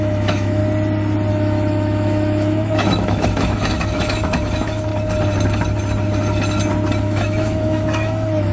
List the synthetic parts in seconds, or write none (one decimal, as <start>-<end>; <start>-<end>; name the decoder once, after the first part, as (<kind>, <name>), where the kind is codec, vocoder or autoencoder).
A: 0.0-0.6 (autoencoder, DAC-VAE); 1.3-4.9; 7.0-8.5